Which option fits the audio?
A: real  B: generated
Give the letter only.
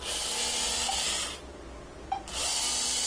A